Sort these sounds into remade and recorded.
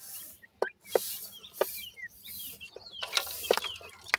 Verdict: recorded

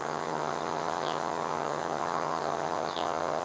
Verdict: remade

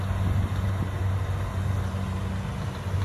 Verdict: recorded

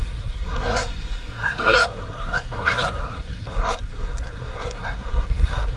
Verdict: remade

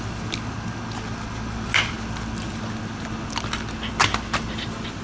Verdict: recorded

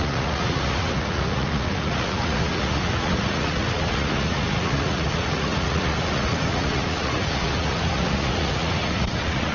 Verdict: remade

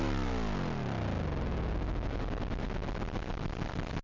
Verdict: recorded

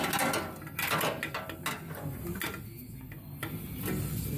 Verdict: recorded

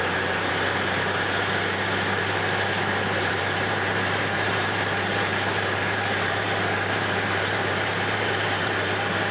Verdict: remade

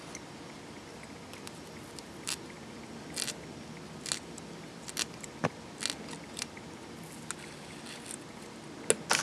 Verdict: recorded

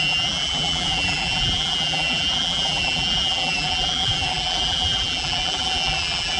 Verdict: remade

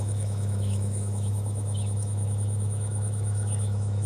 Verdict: remade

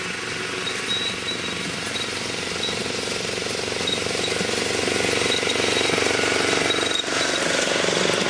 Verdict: recorded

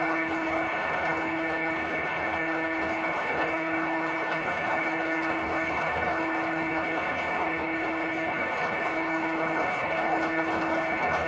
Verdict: remade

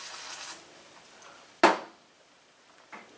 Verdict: recorded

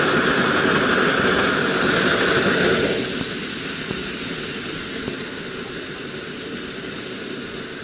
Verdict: recorded